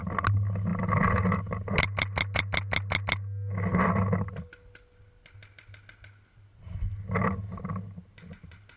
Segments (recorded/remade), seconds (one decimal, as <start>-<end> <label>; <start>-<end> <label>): 0.0-8.8 recorded